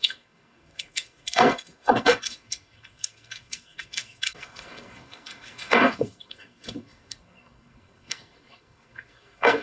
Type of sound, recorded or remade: remade